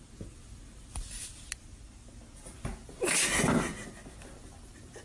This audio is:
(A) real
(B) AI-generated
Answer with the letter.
A